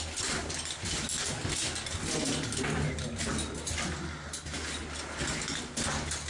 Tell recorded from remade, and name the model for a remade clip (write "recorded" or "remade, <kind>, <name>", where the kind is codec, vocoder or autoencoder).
recorded